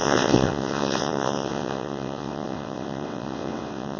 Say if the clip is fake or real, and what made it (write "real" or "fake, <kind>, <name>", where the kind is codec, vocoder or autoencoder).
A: fake, vocoder, WaveNeXt